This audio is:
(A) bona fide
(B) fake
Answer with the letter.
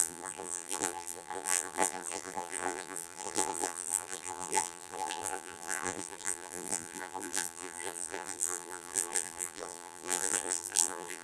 B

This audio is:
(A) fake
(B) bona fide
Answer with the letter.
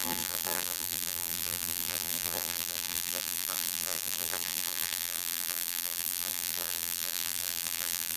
A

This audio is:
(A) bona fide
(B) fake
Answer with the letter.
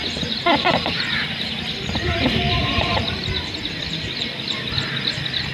B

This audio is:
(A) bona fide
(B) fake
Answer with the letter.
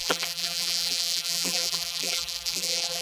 B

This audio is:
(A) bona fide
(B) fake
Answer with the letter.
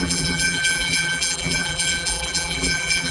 B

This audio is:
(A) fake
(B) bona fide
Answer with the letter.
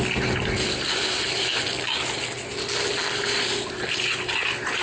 B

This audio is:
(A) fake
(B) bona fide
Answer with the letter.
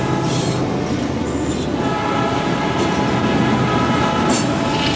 B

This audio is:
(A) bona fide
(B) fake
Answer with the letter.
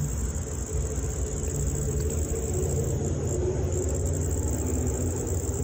A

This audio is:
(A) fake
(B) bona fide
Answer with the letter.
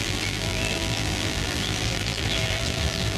A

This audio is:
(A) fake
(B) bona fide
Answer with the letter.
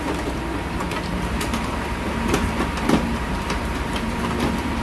A